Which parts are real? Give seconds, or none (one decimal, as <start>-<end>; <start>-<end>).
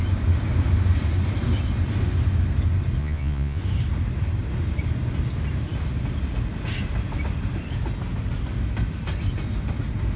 0.0-3.0; 3.6-10.2